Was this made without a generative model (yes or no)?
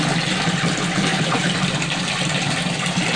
yes